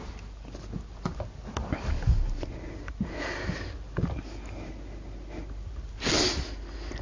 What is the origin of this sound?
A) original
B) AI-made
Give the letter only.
A